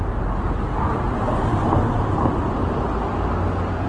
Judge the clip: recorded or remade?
recorded